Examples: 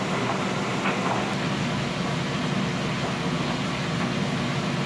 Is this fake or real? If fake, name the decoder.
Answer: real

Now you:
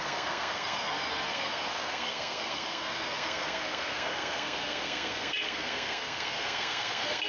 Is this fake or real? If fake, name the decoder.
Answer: fake, codec, SNAC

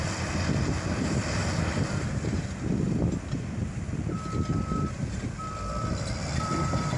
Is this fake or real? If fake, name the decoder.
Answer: fake, vocoder, BigVGAN v2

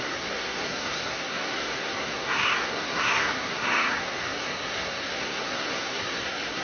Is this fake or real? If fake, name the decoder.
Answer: fake, codec, SNAC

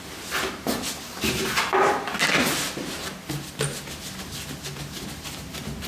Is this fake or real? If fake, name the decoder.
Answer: real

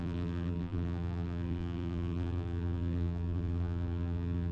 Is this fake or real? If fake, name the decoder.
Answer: fake, vocoder, BigVGAN v2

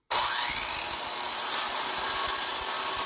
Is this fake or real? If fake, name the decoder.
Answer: real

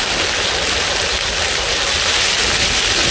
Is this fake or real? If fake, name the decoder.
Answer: real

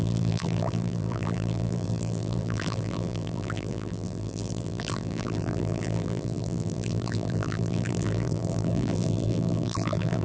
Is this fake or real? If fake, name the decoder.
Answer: fake, vocoder, BigVGAN v2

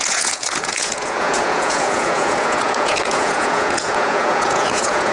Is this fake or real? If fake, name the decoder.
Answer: fake, vocoder, Vocos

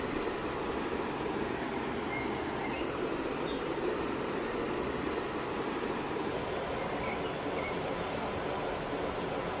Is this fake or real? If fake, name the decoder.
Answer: real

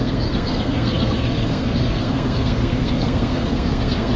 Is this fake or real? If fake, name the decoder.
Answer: fake, codec, SNAC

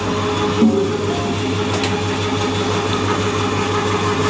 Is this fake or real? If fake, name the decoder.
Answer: real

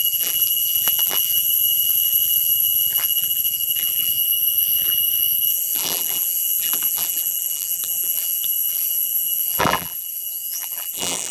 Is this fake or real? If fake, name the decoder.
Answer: fake, vocoder, BigVGAN v2